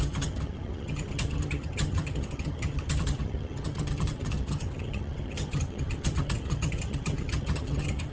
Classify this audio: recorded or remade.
remade